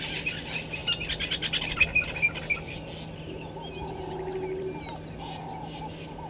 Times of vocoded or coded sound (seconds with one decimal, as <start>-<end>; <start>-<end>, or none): none